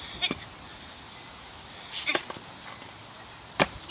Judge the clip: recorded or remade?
recorded